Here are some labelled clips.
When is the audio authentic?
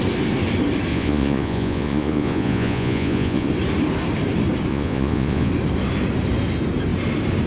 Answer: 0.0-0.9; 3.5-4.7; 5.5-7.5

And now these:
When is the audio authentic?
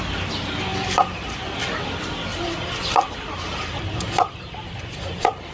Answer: 0.0-0.7; 1.6-2.3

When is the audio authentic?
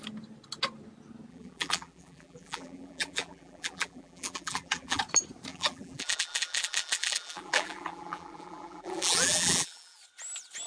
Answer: 0.0-1.3; 5.0-5.5; 10.0-10.7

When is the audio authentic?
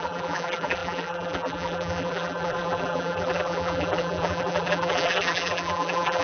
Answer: none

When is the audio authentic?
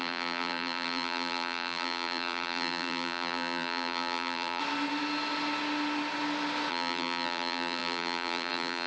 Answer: 4.6-6.7